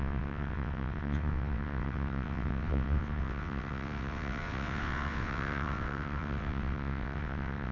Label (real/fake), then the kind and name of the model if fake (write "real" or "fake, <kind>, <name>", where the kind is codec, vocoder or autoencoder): fake, vocoder, WaveNeXt